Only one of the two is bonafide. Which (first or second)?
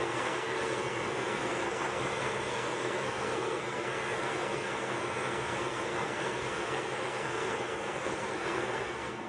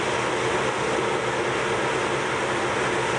second